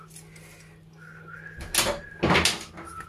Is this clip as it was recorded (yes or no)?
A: yes